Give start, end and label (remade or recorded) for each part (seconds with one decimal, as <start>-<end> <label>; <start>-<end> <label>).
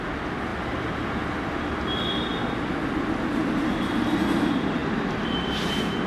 0.0-6.1 recorded